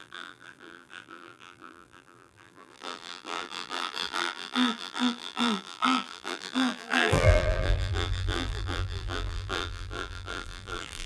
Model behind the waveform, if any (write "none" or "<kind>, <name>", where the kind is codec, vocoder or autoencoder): vocoder, BigVGAN v2